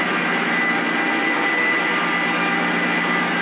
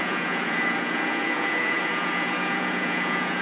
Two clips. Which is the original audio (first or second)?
first